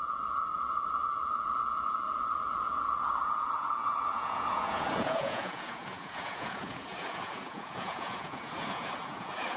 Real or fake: fake